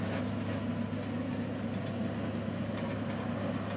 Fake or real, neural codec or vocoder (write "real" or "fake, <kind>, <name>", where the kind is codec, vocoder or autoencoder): real